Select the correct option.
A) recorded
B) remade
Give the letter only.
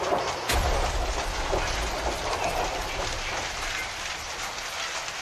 A